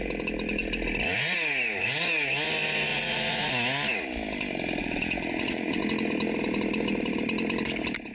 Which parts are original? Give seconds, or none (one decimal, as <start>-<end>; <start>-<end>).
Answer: 0.0-2.9; 3.5-4.8; 5.8-8.1